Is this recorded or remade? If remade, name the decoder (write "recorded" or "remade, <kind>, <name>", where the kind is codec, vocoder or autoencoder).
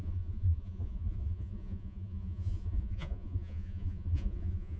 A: remade, vocoder, Vocos